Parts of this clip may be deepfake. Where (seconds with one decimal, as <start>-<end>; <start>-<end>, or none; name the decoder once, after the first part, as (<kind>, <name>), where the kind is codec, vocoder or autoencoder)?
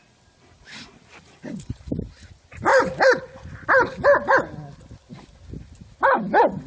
none